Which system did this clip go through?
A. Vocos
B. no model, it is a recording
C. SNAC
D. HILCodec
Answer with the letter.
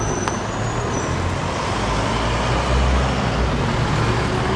B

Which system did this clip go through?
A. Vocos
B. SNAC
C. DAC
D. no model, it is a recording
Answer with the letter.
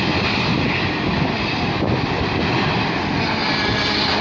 D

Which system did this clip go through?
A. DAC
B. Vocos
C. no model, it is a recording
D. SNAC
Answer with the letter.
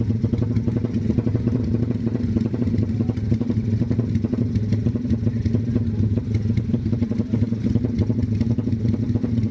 C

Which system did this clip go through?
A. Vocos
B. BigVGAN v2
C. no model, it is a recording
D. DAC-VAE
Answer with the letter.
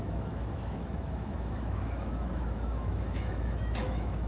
D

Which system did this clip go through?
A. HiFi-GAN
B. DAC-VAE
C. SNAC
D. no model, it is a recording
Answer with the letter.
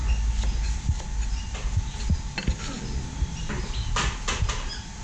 D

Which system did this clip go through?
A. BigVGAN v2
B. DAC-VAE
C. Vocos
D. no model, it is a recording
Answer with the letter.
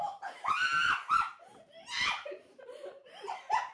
A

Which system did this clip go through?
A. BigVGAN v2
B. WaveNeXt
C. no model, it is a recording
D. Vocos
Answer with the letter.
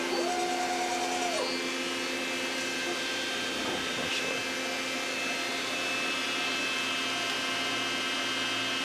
C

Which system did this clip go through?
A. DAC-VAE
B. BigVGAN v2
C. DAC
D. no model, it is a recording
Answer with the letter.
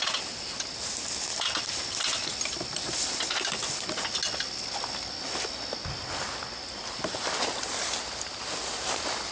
D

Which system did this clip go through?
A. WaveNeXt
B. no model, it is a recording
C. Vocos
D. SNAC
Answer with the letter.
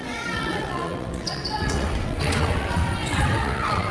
A